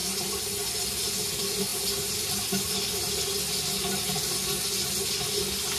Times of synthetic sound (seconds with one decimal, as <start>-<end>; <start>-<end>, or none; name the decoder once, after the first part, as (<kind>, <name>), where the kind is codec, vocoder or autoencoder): none